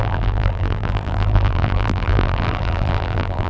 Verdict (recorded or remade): remade